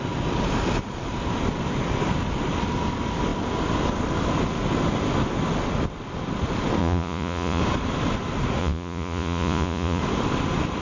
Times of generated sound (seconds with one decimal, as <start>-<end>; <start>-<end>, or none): 6.8-7.6; 8.6-10.0